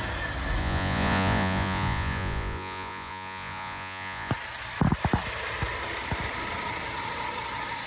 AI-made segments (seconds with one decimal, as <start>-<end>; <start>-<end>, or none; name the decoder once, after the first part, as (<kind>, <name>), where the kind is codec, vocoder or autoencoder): 0.6-4.3 (vocoder, Vocos)